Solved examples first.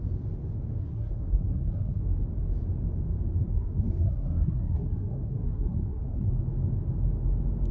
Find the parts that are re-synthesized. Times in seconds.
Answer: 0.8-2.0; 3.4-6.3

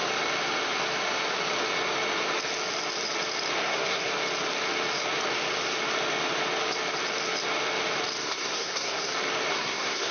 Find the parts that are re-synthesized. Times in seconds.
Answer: 3.6-4.1; 8.2-9.1; 9.5-10.1